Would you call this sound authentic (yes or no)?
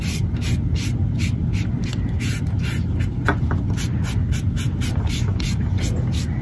yes